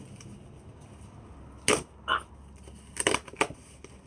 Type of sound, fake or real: real